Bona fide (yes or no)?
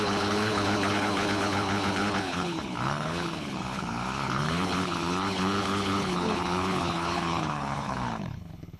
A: no